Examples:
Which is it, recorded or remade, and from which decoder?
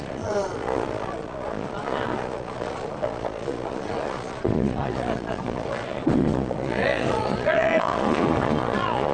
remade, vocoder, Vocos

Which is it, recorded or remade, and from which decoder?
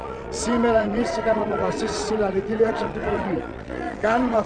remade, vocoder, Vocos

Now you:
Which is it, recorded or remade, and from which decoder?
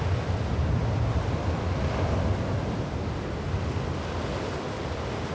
recorded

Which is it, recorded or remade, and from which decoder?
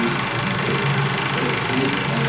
recorded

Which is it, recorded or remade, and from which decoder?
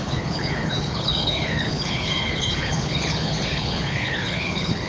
remade, codec, HILCodec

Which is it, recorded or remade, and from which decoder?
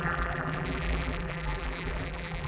remade, vocoder, BigVGAN v2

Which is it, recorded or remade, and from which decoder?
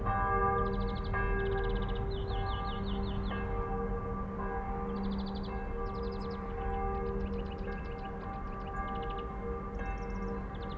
recorded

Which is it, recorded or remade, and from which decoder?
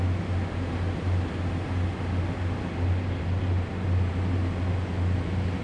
recorded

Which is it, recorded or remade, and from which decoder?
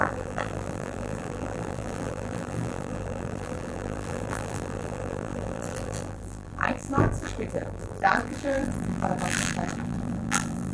remade, vocoder, BigVGAN v2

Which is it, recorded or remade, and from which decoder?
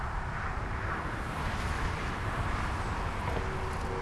recorded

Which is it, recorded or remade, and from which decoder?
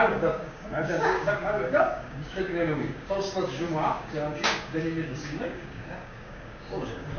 remade, codec, DAC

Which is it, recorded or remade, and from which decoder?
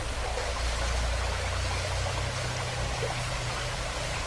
recorded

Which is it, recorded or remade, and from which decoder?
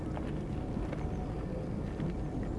recorded